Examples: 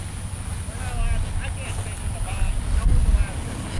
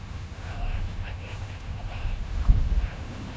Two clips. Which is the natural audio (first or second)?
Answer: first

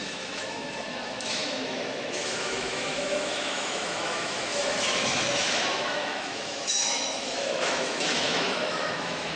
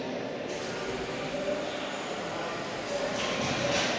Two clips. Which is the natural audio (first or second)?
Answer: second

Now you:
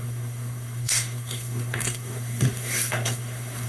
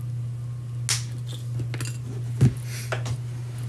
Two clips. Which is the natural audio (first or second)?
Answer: second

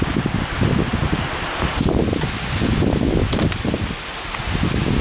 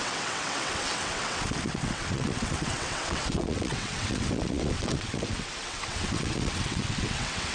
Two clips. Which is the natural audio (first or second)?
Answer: first